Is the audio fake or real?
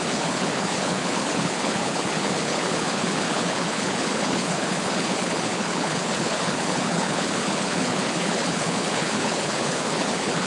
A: fake